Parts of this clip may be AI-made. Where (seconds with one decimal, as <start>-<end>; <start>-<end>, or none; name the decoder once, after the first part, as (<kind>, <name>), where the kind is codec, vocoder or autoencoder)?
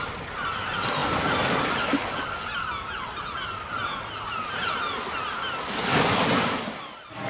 none